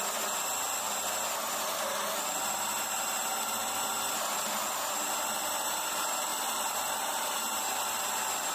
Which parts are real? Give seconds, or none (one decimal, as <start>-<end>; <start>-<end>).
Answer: 0.0-6.3; 8.0-8.5